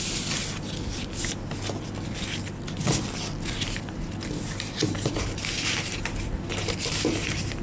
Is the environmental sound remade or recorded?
recorded